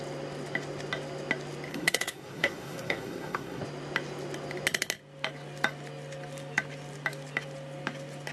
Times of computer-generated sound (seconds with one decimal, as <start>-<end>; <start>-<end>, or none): 1.7-3.6